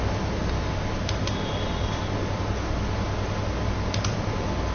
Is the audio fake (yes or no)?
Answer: no